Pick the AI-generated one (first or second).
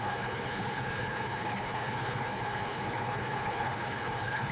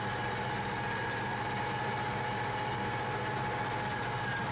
first